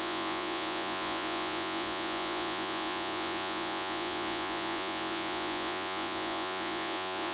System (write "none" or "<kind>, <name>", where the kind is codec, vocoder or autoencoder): vocoder, Vocos